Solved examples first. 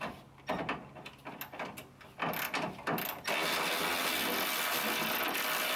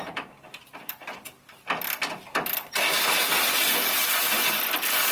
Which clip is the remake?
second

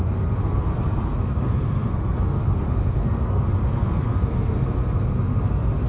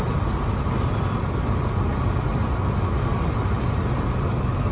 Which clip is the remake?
first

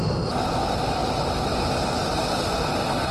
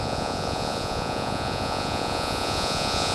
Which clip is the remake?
second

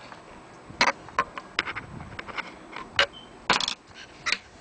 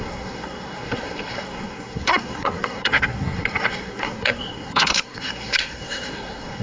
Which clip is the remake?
second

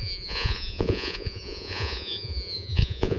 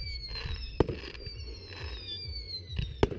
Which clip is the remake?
first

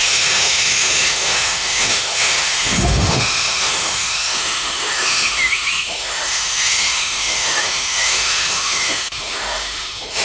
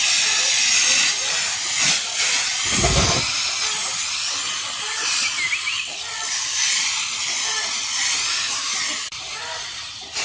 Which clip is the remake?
first